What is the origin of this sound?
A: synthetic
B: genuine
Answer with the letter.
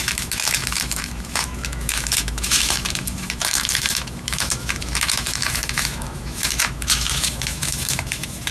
A